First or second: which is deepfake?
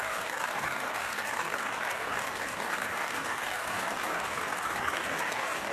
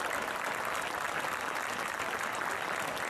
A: first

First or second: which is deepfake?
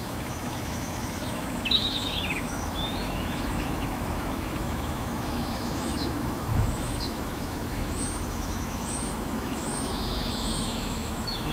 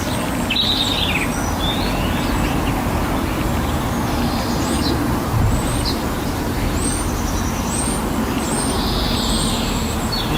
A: first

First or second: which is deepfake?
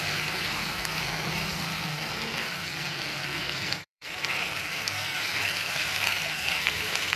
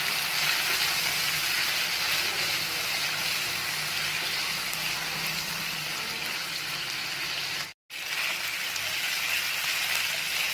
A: first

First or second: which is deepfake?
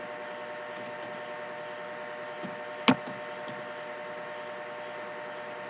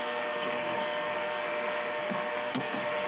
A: second